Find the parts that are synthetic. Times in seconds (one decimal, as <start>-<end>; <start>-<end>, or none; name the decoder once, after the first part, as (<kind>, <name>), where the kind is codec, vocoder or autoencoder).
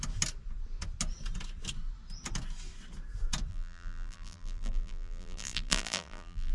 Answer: 3.5-6.5 (vocoder, BigVGAN v2)